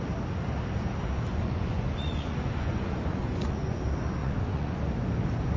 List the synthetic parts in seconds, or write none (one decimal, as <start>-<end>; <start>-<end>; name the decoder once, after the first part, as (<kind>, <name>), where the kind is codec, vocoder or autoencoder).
1.3-3.8 (vocoder, Vocos); 4.2-4.8